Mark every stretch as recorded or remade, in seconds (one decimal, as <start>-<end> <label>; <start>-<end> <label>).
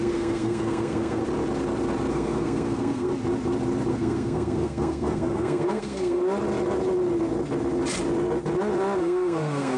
0.0-1.2 remade; 1.2-2.1 recorded; 2.1-3.1 remade; 3.1-3.9 recorded; 3.9-6.2 remade; 6.2-9.0 recorded; 9.0-9.8 remade